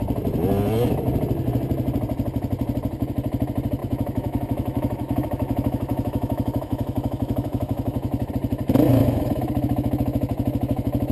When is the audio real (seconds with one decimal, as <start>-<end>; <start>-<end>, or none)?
0.0-3.8; 8.3-8.9